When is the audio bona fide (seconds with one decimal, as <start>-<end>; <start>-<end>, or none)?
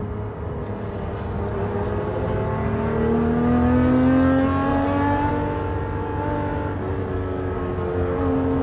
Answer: 0.0-4.7; 5.3-8.6